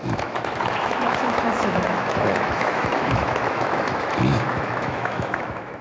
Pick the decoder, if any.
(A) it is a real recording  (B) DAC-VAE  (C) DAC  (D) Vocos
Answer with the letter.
B